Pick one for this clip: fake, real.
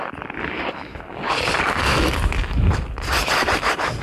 real